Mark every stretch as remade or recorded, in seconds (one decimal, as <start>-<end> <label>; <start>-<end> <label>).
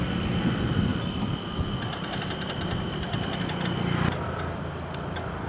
0.0-5.5 recorded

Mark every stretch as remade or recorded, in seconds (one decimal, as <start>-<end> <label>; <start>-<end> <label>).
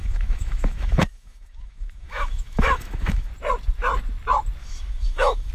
0.0-3.3 remade; 3.3-4.6 recorded; 4.6-5.5 remade